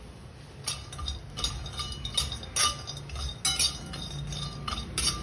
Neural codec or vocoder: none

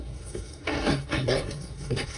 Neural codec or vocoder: codec, SNAC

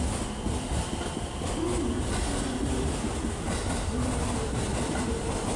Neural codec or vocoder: none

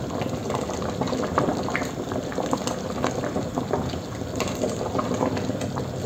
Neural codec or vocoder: none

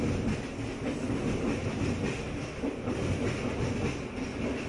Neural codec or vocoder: none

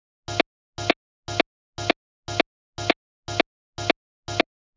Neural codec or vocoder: none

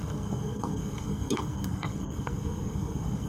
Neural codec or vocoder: codec, SNAC